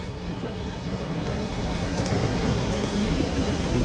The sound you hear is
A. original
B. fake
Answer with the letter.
B